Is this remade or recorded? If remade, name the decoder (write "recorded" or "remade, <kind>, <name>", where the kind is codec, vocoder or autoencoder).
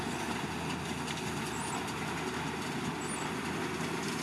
recorded